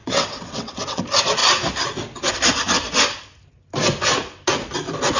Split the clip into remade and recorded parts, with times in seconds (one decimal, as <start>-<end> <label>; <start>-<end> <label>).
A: 0.0-1.0 remade; 1.0-5.2 recorded